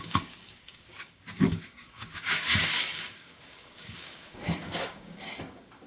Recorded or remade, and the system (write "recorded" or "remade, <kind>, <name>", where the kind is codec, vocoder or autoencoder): remade, codec, DAC